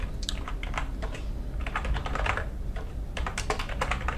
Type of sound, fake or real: fake